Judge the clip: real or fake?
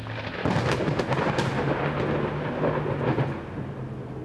real